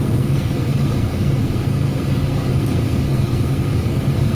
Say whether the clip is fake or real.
fake